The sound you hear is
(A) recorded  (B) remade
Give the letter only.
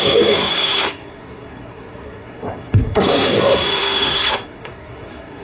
B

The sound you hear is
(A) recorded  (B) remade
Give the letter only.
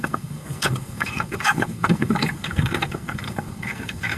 B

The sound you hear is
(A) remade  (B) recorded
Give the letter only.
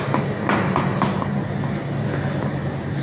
B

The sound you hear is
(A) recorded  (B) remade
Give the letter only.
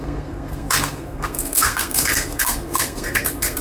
B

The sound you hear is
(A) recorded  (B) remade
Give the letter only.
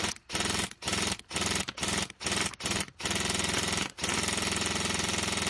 A